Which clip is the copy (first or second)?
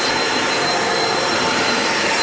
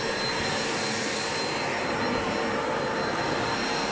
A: first